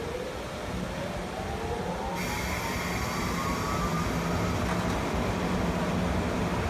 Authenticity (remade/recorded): recorded